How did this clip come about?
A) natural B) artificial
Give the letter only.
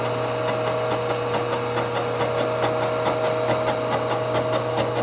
A